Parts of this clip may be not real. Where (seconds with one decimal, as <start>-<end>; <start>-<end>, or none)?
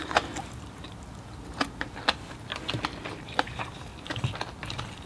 0.0-2.0; 3.1-3.9